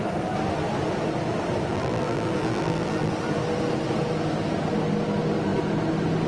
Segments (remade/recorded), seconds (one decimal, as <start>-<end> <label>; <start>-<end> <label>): 0.0-1.7 recorded; 1.7-3.1 remade; 3.1-6.3 recorded